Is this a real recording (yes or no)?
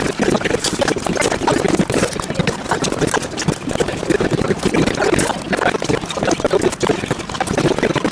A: yes